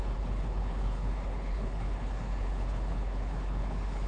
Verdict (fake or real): fake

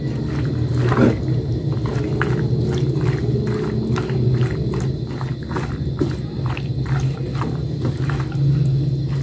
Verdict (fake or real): real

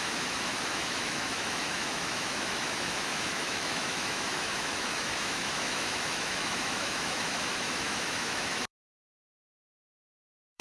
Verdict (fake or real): fake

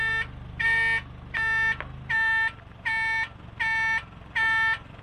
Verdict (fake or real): real